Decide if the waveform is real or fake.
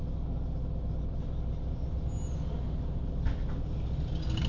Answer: real